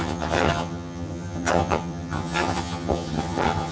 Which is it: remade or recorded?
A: remade